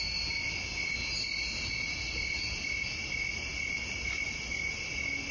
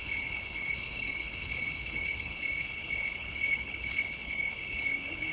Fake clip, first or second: second